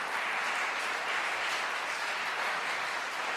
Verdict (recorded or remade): recorded